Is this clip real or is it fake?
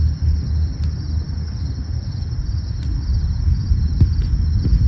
real